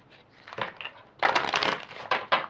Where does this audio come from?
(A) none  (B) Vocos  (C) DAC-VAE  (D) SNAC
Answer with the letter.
A